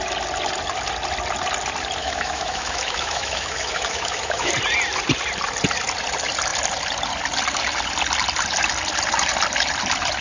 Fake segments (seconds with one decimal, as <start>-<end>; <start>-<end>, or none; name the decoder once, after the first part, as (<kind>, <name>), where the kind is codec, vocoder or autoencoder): 2.0-4.5 (autoencoder, DAC-VAE)

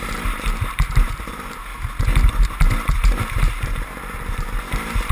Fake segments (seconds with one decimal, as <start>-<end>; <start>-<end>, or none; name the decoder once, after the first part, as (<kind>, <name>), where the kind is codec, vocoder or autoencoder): 0.0-1.7 (vocoder, BigVGAN v2); 2.4-5.1

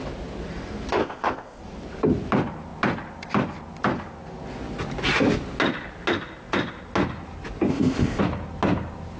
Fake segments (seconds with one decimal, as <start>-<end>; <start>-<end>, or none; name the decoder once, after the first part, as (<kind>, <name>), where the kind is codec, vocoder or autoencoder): 1.0-1.6 (codec, ZipCodec); 7.7-8.2